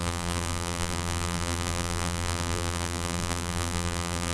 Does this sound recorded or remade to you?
remade